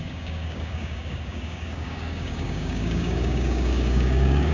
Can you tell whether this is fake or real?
fake